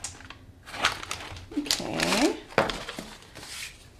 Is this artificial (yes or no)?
no